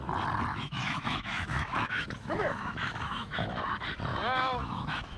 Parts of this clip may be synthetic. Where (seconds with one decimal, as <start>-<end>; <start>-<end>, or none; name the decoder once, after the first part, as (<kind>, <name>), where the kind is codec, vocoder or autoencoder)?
0.5-3.6 (autoencoder, DAC-VAE); 4.1-5.2